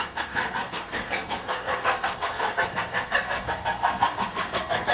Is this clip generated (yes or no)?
yes